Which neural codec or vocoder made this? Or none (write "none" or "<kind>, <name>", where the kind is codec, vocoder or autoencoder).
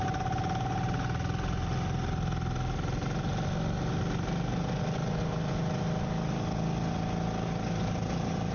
none